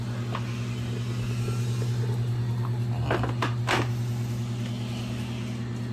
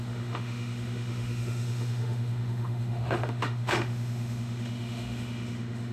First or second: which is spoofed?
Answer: second